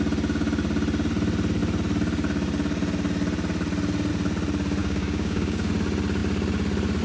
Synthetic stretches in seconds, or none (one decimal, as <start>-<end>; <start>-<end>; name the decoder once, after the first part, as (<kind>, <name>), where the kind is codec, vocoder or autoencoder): 4.8-5.7 (codec, DAC)